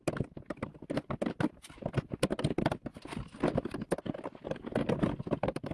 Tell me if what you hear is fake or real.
real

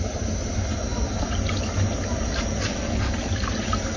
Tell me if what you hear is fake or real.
real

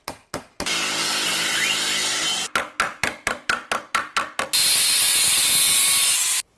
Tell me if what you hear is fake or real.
real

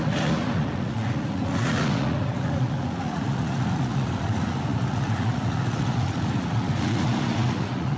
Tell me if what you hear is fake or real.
fake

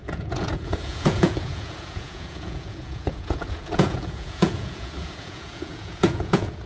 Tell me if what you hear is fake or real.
fake